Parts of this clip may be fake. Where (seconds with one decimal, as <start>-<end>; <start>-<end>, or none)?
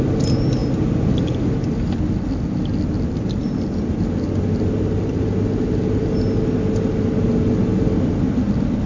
none